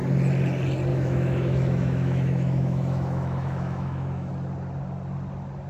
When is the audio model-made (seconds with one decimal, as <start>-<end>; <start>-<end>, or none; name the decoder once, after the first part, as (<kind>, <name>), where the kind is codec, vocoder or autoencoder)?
0.9-4.3 (autoencoder, DAC-VAE)